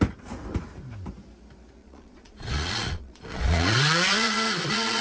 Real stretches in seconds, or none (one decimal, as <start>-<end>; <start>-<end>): 0.0-1.8